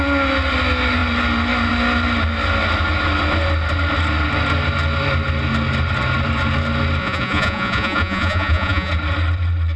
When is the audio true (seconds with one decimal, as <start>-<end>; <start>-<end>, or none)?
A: 0.0-7.0; 8.9-9.8